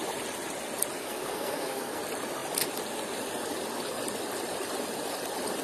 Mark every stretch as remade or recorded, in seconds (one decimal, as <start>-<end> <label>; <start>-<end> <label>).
0.0-1.0 recorded; 1.0-2.0 remade; 2.0-5.6 recorded